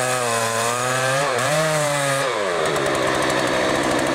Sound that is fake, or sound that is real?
fake